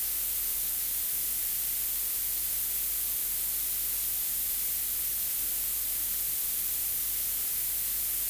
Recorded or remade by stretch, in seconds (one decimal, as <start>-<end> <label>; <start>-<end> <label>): 0.0-0.5 recorded; 0.5-1.4 remade; 1.4-8.3 recorded